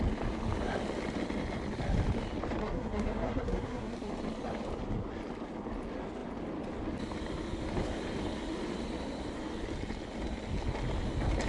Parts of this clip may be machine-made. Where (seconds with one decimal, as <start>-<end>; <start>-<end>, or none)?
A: 2.6-4.1